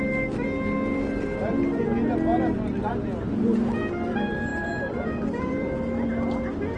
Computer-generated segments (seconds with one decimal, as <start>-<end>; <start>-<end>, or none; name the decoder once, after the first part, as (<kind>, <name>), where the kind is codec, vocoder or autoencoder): 4.5-6.1 (vocoder, BigVGAN v2)